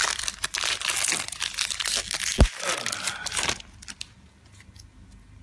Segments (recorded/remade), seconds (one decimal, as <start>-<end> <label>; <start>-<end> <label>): 0.0-5.4 recorded